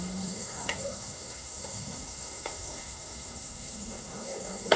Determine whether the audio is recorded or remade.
remade